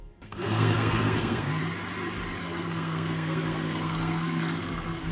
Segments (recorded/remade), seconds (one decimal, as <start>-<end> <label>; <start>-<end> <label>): 0.0-1.6 remade; 1.6-2.4 recorded; 2.4-5.1 remade